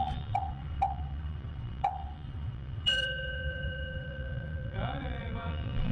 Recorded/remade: remade